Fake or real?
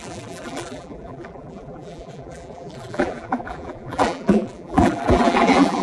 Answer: fake